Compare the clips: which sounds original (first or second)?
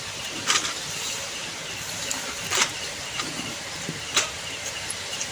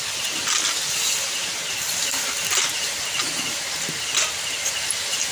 second